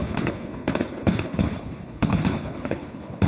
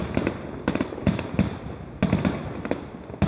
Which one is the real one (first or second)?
second